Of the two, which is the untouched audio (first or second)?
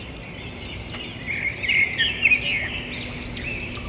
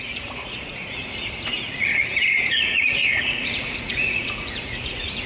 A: first